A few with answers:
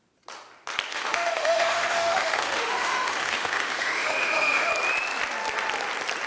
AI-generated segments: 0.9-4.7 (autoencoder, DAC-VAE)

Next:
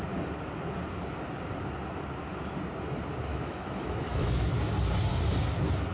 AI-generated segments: 3.3-4.6 (autoencoder, DAC-VAE)

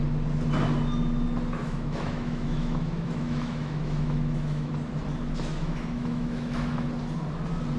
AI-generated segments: 1.6-4.7 (autoencoder, DAC-VAE); 5.5-6.9

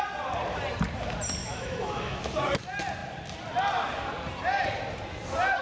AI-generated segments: 1.4-2.2 (autoencoder, DAC-VAE)

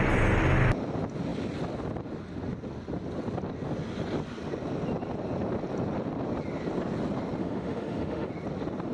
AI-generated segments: 7.4-8.3 (autoencoder, DAC-VAE)

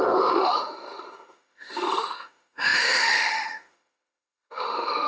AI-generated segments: 0.0-5.1 (autoencoder, DAC-VAE)